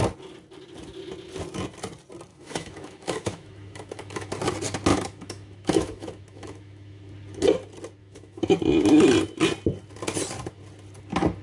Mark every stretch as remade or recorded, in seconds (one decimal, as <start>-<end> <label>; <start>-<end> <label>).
0.0-2.3 recorded; 2.3-4.3 remade; 4.3-4.9 recorded; 4.9-7.1 remade; 7.1-8.0 recorded; 8.0-8.6 remade; 8.6-11.4 recorded